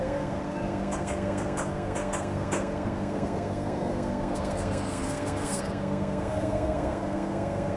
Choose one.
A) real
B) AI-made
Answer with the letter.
B